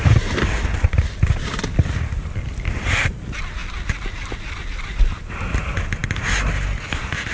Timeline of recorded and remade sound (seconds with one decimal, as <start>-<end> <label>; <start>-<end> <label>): 0.0-7.3 recorded